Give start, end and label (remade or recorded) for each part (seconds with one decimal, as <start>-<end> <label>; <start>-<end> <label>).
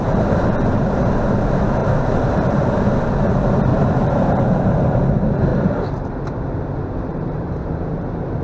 0.0-1.8 recorded; 1.8-2.7 remade; 2.7-3.7 recorded; 3.7-4.4 remade; 4.4-5.5 recorded; 5.5-6.1 remade; 6.1-7.1 recorded; 7.1-8.0 remade; 8.0-8.4 recorded